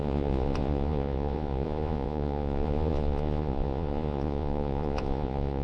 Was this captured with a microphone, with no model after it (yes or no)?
no